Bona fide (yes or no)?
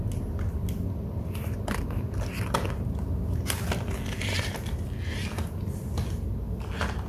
yes